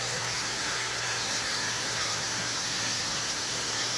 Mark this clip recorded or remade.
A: remade